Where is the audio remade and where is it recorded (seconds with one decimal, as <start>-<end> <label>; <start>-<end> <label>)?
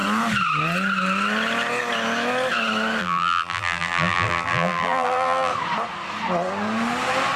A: 0.0-3.0 recorded; 3.0-5.5 remade; 5.5-7.4 recorded